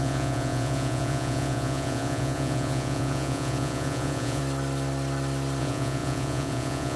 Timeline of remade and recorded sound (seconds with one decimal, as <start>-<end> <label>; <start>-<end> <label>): 0.0-4.4 remade; 4.4-5.6 recorded; 5.6-7.0 remade